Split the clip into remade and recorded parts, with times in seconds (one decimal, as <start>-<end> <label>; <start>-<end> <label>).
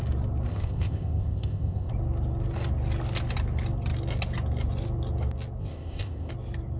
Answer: 0.0-0.5 recorded; 0.5-1.9 remade; 1.9-5.6 recorded; 5.6-6.3 remade; 6.3-6.8 recorded